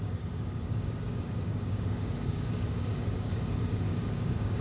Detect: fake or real fake